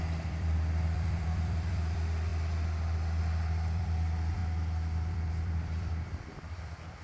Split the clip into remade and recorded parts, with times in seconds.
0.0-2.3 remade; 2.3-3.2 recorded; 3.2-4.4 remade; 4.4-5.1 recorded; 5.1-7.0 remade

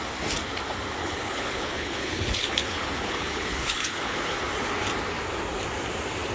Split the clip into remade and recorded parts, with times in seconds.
0.0-1.0 recorded; 1.0-4.4 remade; 4.4-6.3 recorded

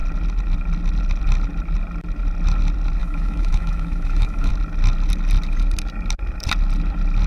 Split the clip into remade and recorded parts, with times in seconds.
0.0-3.0 recorded; 3.0-4.5 remade; 4.5-7.3 recorded

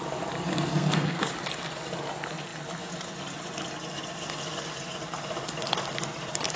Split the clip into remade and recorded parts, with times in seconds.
0.0-0.7 recorded; 0.7-1.3 remade; 1.3-6.6 recorded

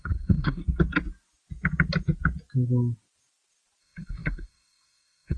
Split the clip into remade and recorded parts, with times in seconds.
0.0-0.6 remade; 0.6-3.8 recorded; 3.8-5.4 remade